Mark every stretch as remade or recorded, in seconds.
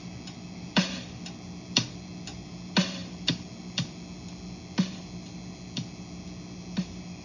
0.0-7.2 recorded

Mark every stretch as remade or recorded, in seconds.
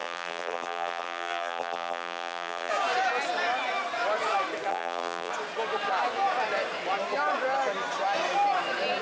0.0-2.7 remade; 2.7-4.7 recorded; 4.7-5.3 remade; 5.3-9.0 recorded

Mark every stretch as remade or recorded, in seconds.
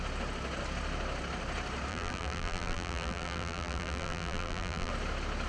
0.0-1.9 recorded; 1.9-4.9 remade; 4.9-5.5 recorded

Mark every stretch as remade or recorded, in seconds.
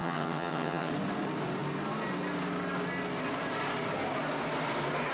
0.0-0.9 remade; 0.9-5.1 recorded